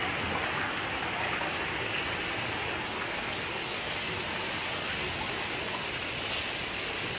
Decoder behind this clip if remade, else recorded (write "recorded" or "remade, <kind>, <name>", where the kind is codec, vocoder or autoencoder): recorded